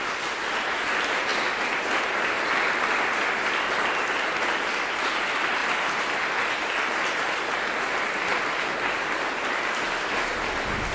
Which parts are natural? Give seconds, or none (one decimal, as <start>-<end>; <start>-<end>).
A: 0.0-10.9